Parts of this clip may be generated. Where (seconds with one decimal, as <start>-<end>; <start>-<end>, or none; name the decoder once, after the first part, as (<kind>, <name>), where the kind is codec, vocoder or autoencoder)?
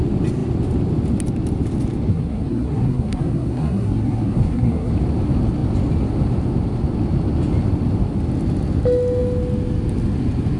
2.1-4.9 (codec, SNAC)